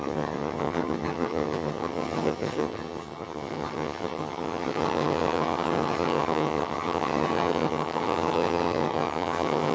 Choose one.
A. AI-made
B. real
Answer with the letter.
A